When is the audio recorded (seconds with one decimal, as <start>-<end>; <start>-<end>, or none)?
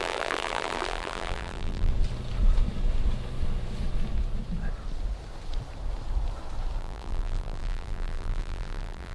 1.9-6.8